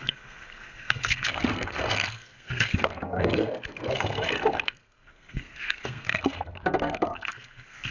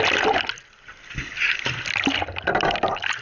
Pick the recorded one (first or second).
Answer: second